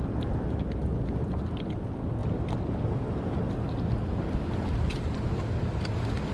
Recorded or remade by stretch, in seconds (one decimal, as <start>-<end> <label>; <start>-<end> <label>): 0.0-6.3 recorded